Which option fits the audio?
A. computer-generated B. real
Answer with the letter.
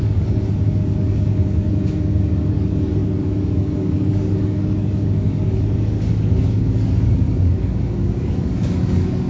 A